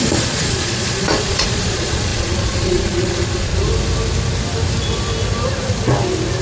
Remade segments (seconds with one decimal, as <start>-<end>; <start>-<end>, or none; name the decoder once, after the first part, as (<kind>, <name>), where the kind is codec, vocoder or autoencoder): 0.0-3.5 (vocoder, Vocos)